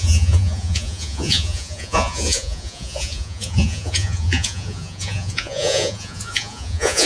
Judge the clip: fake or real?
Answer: fake